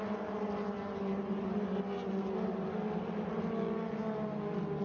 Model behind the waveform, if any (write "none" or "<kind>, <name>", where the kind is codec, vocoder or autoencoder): none